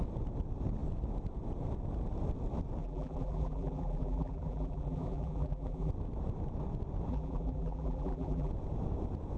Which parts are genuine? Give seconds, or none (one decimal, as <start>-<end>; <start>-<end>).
0.0-2.8; 5.9-7.1; 8.5-9.4